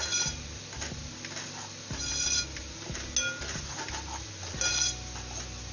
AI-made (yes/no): no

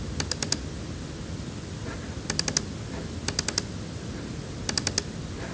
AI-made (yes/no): no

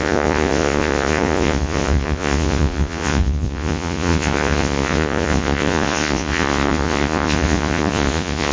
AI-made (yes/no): yes